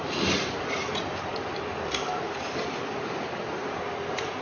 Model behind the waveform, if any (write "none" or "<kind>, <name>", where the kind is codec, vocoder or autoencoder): vocoder, BigVGAN v2